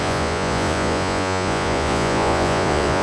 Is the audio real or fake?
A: fake